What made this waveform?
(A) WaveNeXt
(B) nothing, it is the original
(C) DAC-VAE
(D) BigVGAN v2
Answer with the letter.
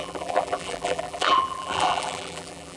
D